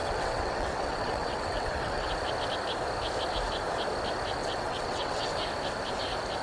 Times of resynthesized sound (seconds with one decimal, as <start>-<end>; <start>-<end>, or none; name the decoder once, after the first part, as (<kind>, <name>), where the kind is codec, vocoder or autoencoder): 0.0-2.1 (vocoder, WaveNeXt); 4.4-5.3